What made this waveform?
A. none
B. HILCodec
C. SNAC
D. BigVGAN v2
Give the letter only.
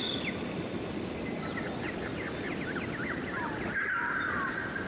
A